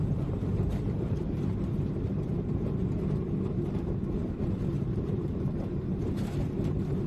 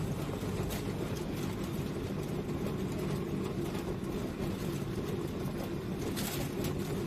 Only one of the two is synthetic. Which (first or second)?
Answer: first